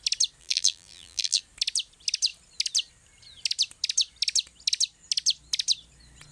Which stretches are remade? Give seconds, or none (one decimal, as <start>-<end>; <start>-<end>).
0.4-1.4